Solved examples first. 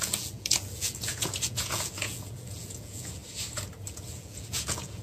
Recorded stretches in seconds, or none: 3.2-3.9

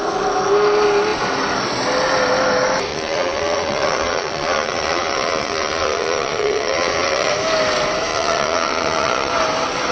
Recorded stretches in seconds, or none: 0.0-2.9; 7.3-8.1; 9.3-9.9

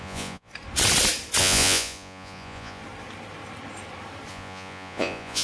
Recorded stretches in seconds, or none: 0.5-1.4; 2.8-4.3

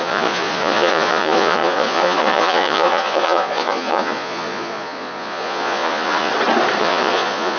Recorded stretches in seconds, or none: 6.3-6.8

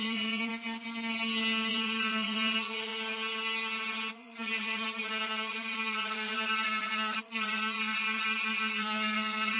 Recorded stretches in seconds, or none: 0.5-1.7; 2.9-4.1

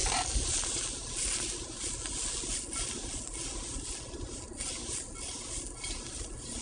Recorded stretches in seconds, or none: 0.0-6.6

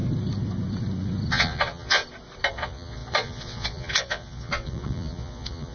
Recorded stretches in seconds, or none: 0.0-1.3; 2.0-2.5